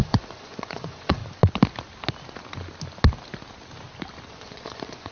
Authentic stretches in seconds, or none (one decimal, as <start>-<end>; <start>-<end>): 1.2-4.3